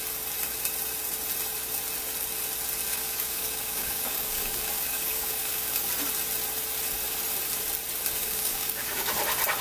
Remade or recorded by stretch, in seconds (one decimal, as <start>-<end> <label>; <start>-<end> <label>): 0.0-2.9 recorded; 2.9-5.9 remade; 5.9-8.2 recorded; 8.2-9.1 remade; 9.1-9.6 recorded